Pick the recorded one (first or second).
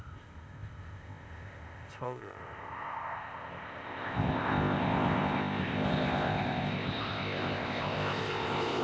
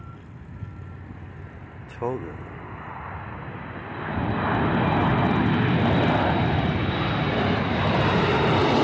second